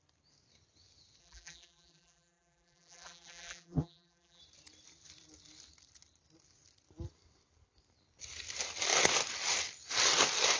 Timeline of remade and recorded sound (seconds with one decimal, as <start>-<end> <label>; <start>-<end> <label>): 0.0-1.2 recorded; 1.2-4.4 remade; 4.4-10.6 recorded